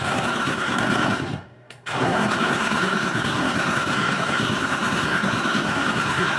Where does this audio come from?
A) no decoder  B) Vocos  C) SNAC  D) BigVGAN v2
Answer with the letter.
C